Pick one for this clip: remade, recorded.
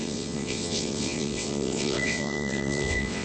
remade